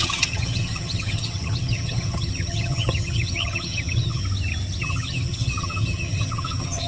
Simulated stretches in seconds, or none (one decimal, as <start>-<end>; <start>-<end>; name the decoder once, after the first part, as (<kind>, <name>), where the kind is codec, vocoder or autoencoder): 0.0-4.2 (vocoder, HiFi-GAN); 4.8-6.9